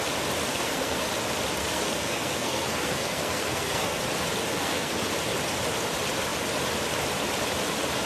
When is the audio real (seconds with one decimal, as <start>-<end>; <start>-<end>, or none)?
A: 0.0-0.5; 1.1-1.6; 4.0-4.5; 5.1-8.1